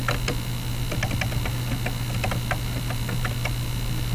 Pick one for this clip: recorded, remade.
recorded